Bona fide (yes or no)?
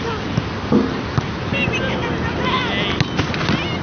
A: yes